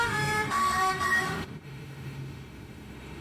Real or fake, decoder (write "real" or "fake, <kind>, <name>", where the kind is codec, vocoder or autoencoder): fake, autoencoder, DAC-VAE